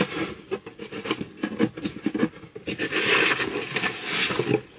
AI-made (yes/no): no